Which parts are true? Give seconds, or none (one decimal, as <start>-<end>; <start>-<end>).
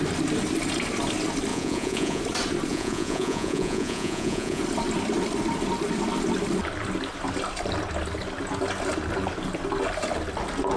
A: 0.0-1.5; 2.2-2.7; 4.6-10.8